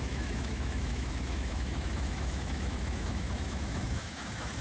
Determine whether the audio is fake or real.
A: fake